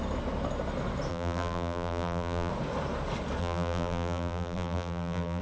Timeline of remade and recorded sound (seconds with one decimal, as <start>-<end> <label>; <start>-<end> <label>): 0.0-1.1 recorded; 1.1-2.5 remade; 2.5-3.4 recorded; 3.4-5.4 remade